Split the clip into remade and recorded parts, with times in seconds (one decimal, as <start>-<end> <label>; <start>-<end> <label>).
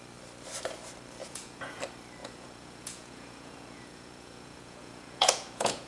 0.0-1.2 recorded; 1.2-1.8 remade; 1.8-2.2 recorded; 2.2-5.9 remade